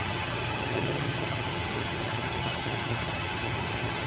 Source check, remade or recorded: remade